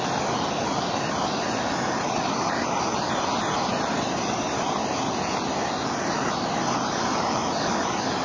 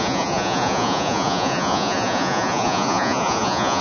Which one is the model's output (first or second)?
second